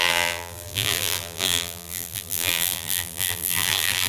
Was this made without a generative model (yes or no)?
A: no